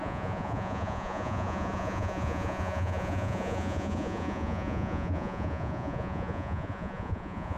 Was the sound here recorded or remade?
remade